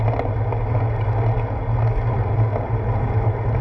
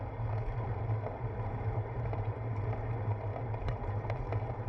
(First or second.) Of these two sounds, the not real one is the second